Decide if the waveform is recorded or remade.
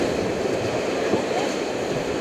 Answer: remade